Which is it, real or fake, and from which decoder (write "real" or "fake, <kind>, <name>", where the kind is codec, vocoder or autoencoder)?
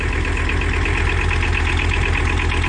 real